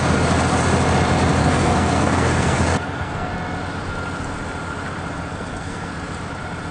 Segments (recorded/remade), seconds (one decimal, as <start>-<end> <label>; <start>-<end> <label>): 0.0-1.4 recorded; 1.4-3.3 remade; 3.3-5.3 recorded; 5.3-5.9 remade; 5.9-6.7 recorded